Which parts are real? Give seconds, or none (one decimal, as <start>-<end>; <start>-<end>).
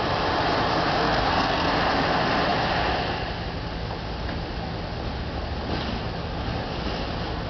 0.0-1.0; 1.7-7.5